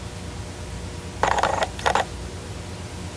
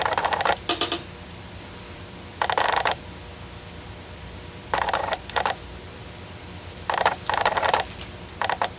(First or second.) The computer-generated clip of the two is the second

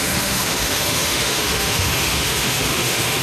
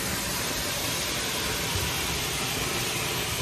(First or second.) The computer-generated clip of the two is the first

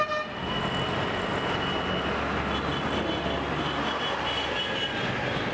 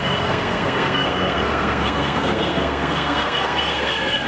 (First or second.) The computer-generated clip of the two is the second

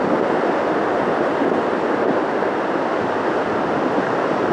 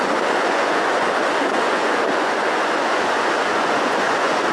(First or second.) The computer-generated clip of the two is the second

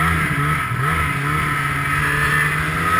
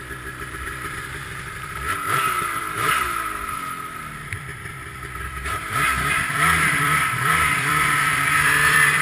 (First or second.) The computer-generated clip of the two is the second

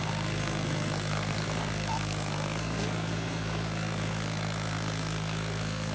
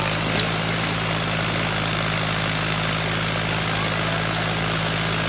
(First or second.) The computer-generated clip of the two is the first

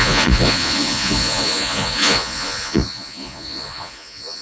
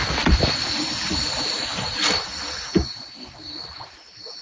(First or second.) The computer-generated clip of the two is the first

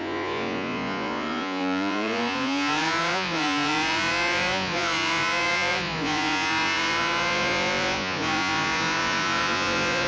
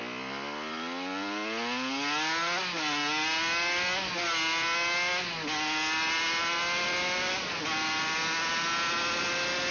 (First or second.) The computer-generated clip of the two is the first